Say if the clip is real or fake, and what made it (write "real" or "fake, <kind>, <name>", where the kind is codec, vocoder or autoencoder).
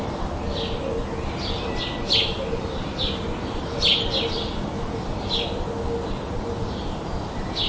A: real